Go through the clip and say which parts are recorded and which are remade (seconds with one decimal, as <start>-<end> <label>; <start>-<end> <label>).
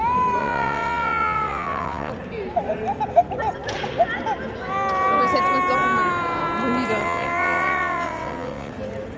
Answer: 0.0-0.4 recorded; 0.4-2.1 remade; 2.1-7.0 recorded; 7.0-8.7 remade; 8.7-9.2 recorded